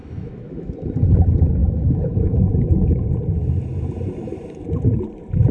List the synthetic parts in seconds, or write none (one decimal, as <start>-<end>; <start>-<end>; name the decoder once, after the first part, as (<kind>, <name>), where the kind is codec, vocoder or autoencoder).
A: 0.0-0.7 (autoencoder, DAC-VAE); 1.6-2.9